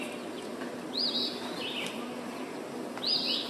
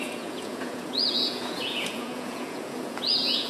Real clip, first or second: first